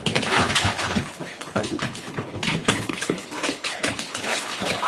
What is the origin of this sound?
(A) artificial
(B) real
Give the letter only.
A